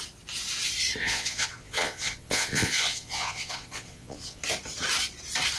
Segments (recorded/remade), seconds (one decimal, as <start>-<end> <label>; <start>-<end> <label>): 0.0-1.0 recorded; 1.0-4.4 remade; 4.4-5.6 recorded